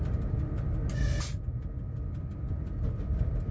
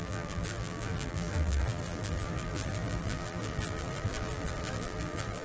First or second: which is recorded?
first